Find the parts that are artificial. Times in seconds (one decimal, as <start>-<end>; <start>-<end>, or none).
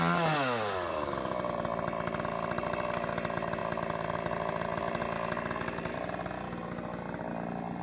none